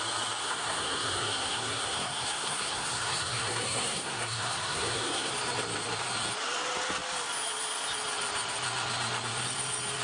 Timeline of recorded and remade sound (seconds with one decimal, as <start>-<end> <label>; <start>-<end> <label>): 0.0-0.4 recorded; 0.4-5.3 remade; 5.3-10.0 recorded